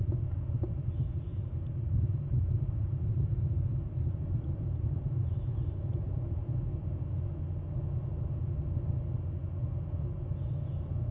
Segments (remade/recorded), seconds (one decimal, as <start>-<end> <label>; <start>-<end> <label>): 0.0-1.3 recorded; 1.3-6.4 remade; 6.4-11.1 recorded